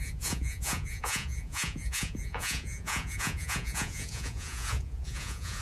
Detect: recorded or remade remade